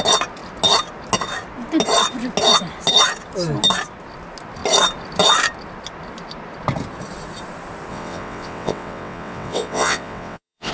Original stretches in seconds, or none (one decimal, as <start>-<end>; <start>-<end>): 0.0-7.9